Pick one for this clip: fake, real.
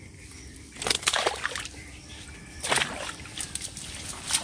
real